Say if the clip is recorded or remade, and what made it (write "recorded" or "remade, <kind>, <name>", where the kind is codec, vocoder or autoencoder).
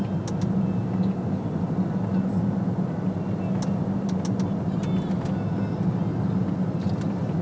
recorded